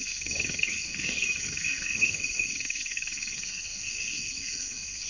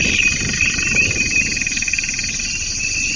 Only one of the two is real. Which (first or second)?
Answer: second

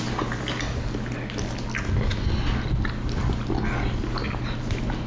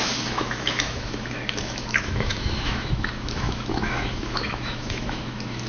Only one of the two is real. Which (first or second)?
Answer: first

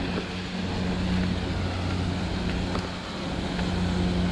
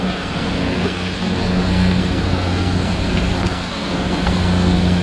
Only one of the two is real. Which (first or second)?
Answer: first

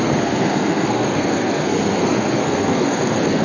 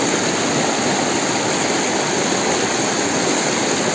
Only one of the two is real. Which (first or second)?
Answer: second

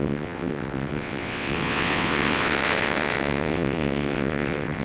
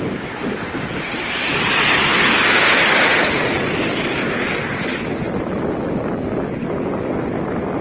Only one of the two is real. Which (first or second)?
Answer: second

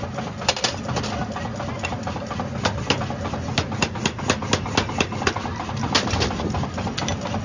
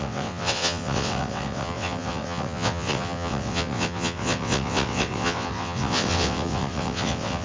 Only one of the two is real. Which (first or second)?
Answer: first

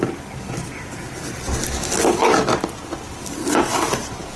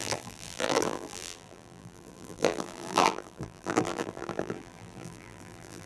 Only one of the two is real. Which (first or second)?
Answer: first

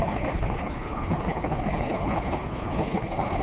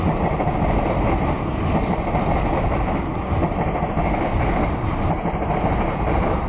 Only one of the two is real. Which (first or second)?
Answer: second